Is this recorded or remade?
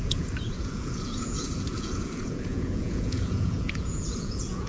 remade